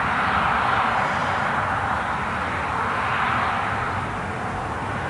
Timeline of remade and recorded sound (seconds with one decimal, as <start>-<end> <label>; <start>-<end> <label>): 0.0-5.1 recorded